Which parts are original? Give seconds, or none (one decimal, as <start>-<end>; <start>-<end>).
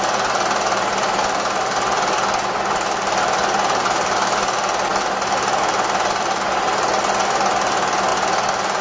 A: 0.0-8.8